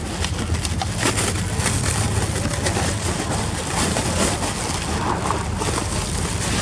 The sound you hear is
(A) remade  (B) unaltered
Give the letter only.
B